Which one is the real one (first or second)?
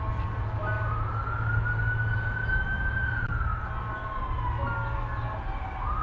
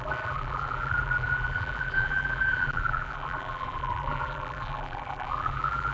first